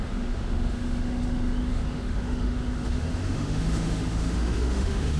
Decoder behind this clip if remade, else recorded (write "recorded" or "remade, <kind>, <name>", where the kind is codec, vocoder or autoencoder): remade, autoencoder, DAC-VAE